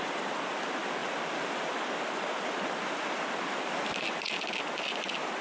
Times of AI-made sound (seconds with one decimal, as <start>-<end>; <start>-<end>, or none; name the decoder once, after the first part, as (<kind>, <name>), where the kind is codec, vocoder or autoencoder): none